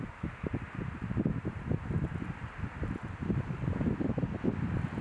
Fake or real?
real